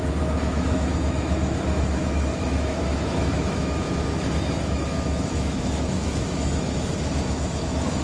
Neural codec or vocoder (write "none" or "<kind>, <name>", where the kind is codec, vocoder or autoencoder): autoencoder, DAC-VAE